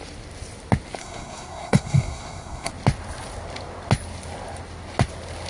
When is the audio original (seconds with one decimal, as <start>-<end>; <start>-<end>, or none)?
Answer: 0.0-1.0; 2.7-5.5